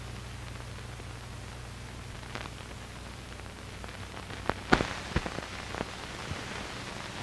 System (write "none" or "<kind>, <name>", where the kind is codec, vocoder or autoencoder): none